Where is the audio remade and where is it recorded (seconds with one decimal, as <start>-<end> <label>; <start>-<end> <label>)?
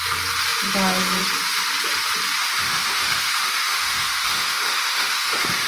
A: 0.0-2.4 recorded; 2.4-5.7 remade